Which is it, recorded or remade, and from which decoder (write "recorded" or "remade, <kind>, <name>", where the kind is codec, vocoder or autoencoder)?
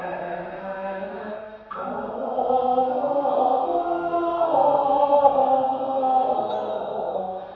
remade, codec, SNAC